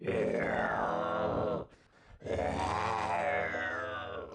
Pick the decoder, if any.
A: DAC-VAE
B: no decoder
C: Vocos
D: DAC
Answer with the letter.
B